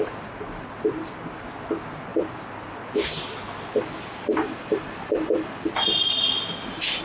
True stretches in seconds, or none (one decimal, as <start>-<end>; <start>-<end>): 0.0-7.0